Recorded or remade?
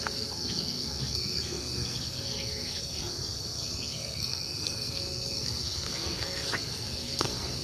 remade